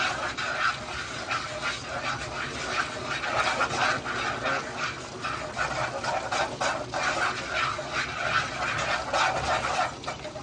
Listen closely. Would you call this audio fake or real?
real